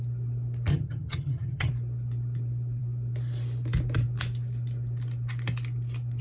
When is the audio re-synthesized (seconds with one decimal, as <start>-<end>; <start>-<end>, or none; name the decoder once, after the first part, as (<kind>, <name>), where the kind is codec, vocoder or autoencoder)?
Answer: 0.7-1.7 (vocoder, HiFi-GAN)